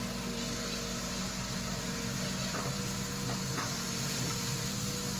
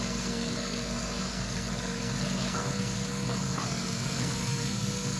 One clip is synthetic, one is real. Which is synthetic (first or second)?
second